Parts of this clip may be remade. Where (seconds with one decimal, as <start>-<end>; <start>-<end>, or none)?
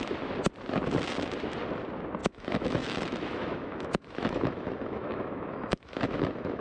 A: 2.2-6.6